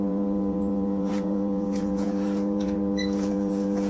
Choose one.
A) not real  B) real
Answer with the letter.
A